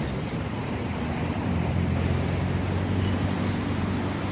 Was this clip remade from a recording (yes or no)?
no